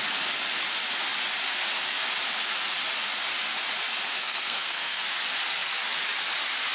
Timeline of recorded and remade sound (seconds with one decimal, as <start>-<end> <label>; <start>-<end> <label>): 0.0-4.2 recorded; 4.2-5.0 remade; 5.0-6.7 recorded